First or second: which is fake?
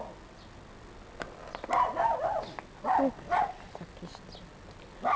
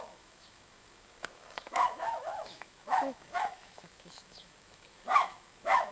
second